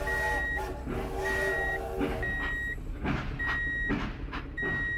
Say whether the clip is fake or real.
real